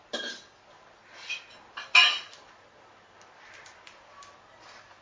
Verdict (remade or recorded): recorded